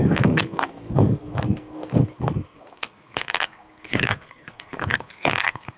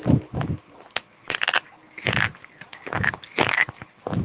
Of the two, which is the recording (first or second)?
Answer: second